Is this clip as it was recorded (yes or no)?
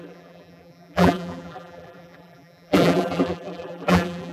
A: no